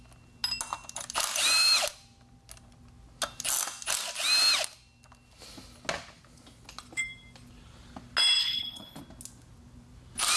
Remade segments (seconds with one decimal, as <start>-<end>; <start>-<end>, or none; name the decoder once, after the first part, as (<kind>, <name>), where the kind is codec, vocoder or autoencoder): 8.4-9.0 (codec, HILCodec)